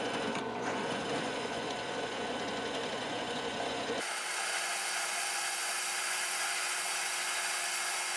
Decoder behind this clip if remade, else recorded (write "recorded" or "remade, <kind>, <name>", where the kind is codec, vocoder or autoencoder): remade, vocoder, Vocos